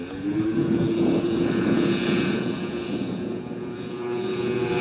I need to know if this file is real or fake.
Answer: fake